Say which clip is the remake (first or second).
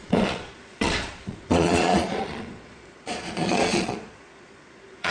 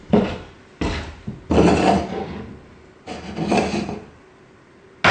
first